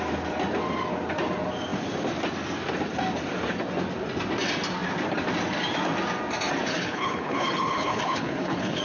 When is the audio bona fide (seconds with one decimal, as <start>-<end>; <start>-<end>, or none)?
0.0-6.7